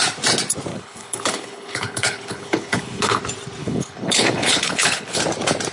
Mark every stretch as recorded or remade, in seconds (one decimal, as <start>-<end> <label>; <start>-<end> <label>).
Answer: 0.0-0.7 recorded; 0.7-3.2 remade; 3.2-3.6 recorded; 3.6-5.2 remade; 5.2-5.7 recorded